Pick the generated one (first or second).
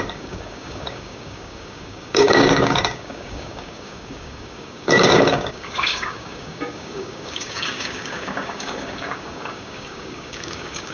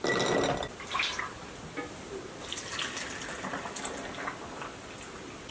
first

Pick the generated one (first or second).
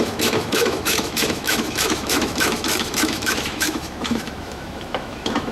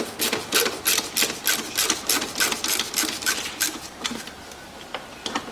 first